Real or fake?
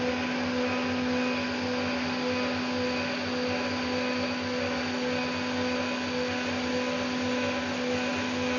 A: real